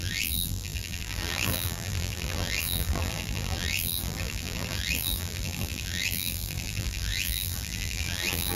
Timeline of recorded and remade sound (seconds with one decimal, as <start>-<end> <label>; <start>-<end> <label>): 0.0-8.6 remade